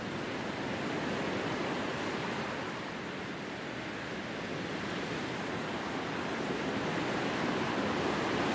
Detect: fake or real real